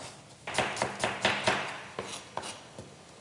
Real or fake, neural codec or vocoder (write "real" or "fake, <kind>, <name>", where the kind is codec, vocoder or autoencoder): real